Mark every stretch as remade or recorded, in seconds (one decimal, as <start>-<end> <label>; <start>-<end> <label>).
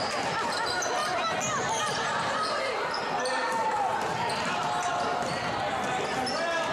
0.0-1.0 remade; 1.0-2.5 recorded; 2.5-3.9 remade; 3.9-6.3 recorded; 6.3-6.7 remade